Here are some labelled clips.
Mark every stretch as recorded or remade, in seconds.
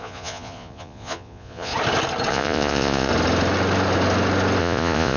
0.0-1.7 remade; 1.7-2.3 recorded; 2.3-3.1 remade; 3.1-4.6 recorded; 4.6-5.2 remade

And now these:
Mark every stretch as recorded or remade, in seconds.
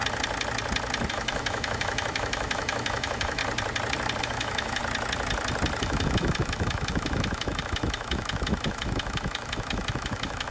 0.0-1.1 recorded; 1.1-3.4 remade; 3.4-4.2 recorded; 4.2-4.8 remade; 4.8-5.8 recorded; 5.8-10.5 remade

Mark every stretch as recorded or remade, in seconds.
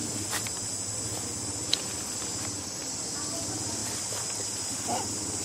0.0-5.4 recorded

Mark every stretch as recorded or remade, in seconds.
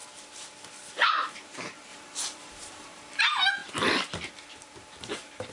0.0-1.3 recorded; 1.3-3.6 remade; 3.6-4.3 recorded; 4.3-5.5 remade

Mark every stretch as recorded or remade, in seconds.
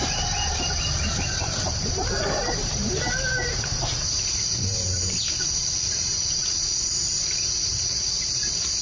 0.0-8.8 remade